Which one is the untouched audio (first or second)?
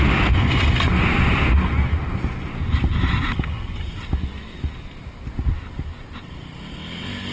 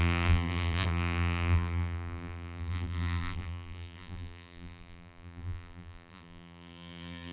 first